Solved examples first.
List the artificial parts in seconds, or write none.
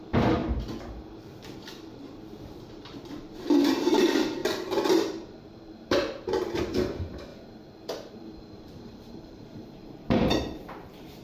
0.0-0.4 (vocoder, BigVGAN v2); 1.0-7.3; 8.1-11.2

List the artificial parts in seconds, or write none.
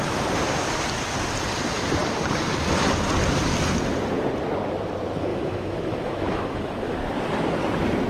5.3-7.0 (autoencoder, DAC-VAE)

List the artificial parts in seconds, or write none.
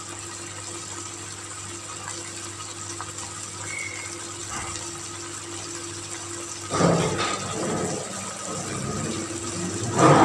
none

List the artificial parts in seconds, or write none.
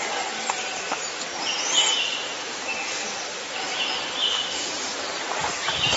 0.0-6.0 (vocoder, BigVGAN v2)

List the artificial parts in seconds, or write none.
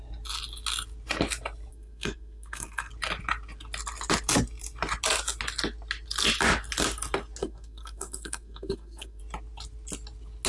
1.7-2.9 (codec, SNAC); 7.4-9.2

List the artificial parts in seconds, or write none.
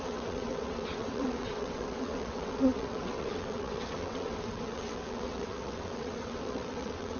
0.0-7.2 (vocoder, WaveNeXt)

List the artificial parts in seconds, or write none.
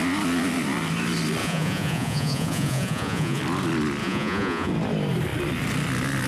1.4-3.4 (vocoder, Vocos); 4.0-4.7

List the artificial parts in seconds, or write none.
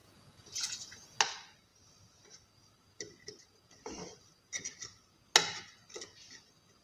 0.0-1.2 (vocoder, Vocos)